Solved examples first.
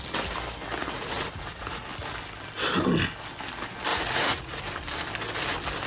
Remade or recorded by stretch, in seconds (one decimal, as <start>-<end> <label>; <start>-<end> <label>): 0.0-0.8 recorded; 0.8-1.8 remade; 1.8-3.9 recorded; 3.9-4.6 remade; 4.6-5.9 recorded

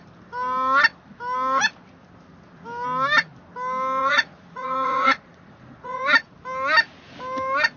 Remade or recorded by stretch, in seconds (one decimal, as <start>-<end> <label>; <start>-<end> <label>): 0.0-4.0 recorded; 4.0-6.0 remade; 6.0-7.8 recorded

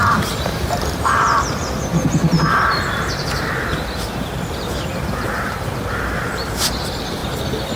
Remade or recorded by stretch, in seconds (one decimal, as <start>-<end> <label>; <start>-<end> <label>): 0.0-1.9 remade; 1.9-2.9 recorded; 2.9-7.2 remade; 7.2-7.8 recorded